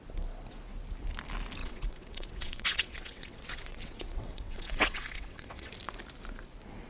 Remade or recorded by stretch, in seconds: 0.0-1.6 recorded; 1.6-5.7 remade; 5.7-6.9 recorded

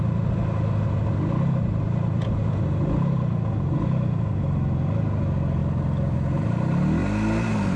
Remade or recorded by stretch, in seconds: 0.0-7.8 recorded